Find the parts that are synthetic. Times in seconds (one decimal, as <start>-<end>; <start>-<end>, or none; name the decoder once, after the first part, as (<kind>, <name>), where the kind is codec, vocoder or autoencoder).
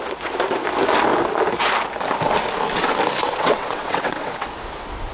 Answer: 3.2-4.5 (vocoder, WaveNeXt)